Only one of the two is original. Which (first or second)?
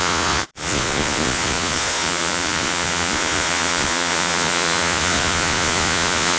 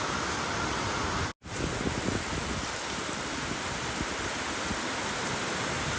second